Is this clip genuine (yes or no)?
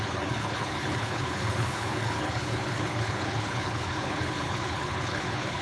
no